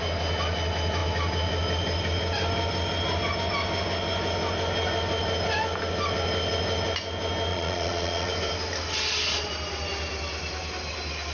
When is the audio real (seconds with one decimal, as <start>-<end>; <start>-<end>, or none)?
0.0-7.5; 8.3-11.3